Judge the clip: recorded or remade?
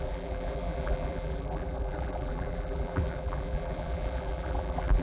remade